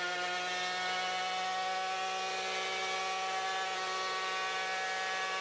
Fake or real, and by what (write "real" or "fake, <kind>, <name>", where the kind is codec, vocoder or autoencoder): real